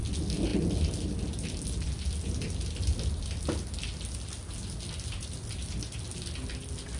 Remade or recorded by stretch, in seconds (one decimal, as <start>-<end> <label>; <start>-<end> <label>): 0.0-7.0 recorded